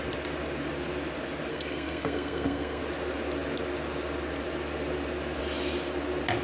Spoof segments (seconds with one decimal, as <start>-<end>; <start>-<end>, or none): 1.5-2.8